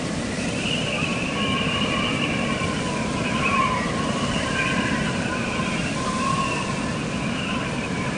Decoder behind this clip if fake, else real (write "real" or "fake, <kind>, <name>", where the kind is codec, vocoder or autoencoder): fake, vocoder, BigVGAN v2